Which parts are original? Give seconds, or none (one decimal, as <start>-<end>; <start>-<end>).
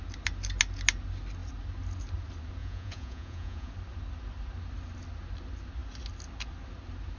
0.0-2.6; 3.7-7.2